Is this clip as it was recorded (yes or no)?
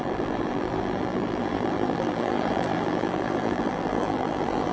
no